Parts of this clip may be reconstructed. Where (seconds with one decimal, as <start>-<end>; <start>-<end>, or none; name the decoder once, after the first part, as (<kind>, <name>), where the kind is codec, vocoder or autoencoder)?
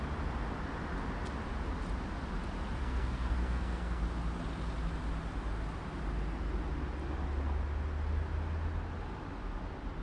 2.8-4.0 (codec, SNAC)